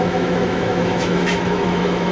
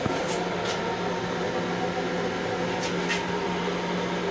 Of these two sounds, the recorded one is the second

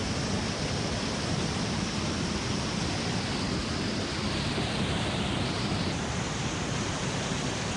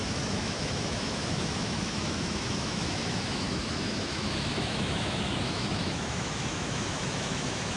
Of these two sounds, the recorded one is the first